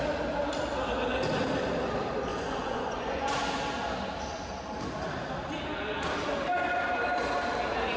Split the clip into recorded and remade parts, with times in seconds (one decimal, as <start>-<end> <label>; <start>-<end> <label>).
0.0-2.3 recorded; 2.3-3.3 remade; 3.3-8.0 recorded